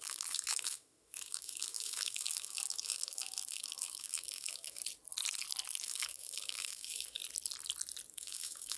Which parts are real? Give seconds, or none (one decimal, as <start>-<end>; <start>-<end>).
4.8-5.8; 7.2-8.1